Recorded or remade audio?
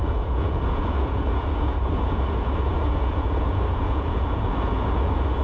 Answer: remade